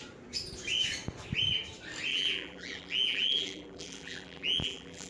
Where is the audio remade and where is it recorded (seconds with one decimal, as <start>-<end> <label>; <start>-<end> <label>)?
0.0-2.1 recorded; 2.1-5.1 remade